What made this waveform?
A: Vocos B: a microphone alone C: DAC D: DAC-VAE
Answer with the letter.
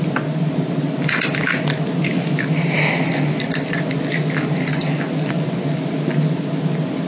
B